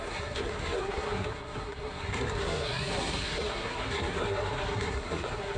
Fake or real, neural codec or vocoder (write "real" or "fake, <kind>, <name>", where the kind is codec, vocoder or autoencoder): fake, codec, SNAC